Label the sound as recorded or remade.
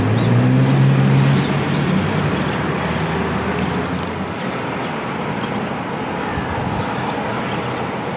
recorded